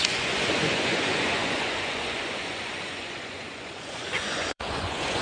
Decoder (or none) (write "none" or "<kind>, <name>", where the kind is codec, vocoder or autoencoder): vocoder, Vocos